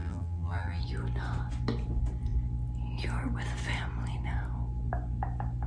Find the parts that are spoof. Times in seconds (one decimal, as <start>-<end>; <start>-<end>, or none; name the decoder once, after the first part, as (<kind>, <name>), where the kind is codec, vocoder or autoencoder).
0.0-0.8 (vocoder, BigVGAN v2)